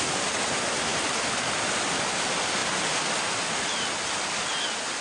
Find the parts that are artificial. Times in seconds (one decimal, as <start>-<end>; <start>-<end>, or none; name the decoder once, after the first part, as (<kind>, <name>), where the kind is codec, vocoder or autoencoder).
0.9-1.8 (vocoder, BigVGAN v2)